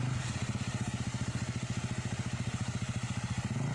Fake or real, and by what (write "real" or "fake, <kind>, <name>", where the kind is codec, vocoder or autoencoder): real